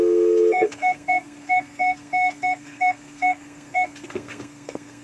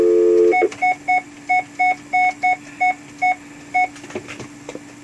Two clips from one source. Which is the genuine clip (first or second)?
second